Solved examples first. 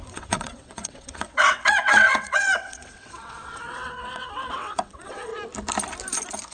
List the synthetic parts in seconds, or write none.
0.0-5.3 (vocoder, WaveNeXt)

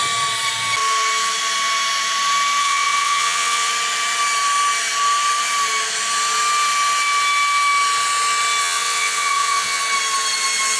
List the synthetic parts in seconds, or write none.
2.6-3.7 (vocoder, WaveNeXt); 8.6-9.8

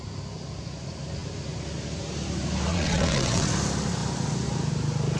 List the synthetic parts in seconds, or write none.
2.7-3.5 (vocoder, WaveNeXt)

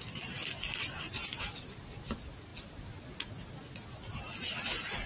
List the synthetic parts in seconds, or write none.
none